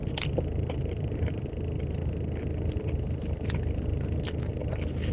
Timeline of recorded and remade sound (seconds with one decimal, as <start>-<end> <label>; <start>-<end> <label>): 0.0-1.4 remade; 1.4-5.1 recorded